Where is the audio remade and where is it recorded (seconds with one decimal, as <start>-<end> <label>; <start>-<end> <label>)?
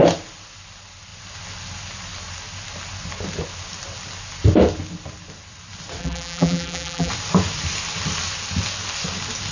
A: 0.0-6.0 recorded; 6.0-7.1 remade; 7.1-9.5 recorded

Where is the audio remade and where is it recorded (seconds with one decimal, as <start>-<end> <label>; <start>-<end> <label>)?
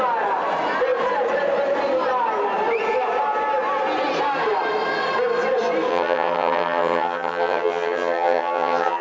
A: 0.0-5.9 recorded; 5.9-9.0 remade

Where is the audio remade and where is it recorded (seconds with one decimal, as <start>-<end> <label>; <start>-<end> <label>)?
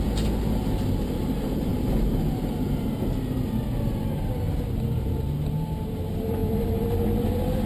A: 0.0-7.7 recorded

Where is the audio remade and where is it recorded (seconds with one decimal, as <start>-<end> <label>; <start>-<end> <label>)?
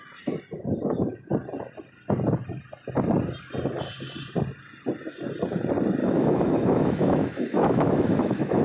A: 0.0-6.0 recorded; 6.0-8.6 remade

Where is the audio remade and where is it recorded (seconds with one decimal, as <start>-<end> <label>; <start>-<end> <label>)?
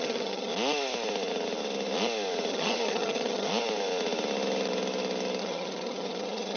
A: 0.0-0.5 remade; 0.5-2.5 recorded; 2.5-3.5 remade; 3.5-5.4 recorded; 5.4-6.6 remade